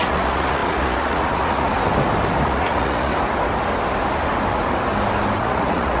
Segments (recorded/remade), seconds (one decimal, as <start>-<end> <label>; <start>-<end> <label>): 0.0-1.7 remade; 1.7-2.4 recorded; 2.4-3.1 remade; 3.1-5.4 recorded; 5.4-6.0 remade